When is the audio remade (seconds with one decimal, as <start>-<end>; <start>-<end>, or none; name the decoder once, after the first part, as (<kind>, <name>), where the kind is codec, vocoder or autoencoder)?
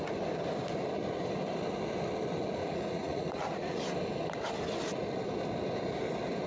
2.6-3.8 (vocoder, Vocos)